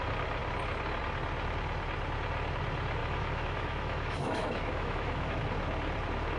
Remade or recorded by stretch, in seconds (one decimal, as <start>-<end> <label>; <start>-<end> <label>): 0.0-3.0 recorded; 3.0-5.4 remade; 5.4-6.4 recorded